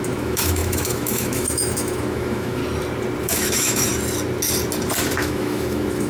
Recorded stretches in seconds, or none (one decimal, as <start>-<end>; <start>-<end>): 2.6-3.2; 3.9-5.2